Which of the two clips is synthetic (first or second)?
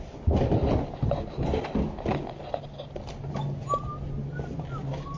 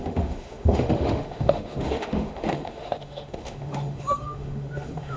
second